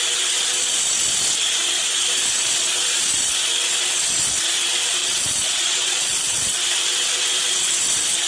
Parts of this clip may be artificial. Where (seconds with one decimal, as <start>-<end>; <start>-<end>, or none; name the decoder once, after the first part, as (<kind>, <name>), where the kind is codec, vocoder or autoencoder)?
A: 5.0-6.6 (vocoder, WaveNeXt)